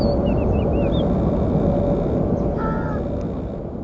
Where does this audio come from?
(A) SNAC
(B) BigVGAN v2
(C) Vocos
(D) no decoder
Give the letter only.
D